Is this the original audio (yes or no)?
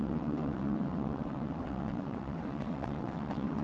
no